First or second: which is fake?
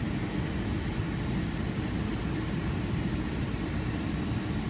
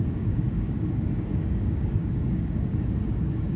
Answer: second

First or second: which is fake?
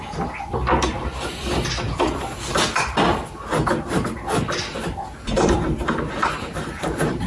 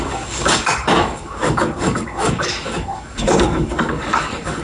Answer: second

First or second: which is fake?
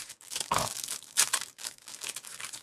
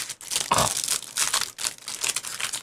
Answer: first